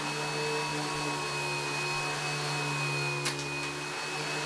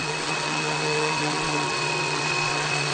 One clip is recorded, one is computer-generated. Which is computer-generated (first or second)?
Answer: second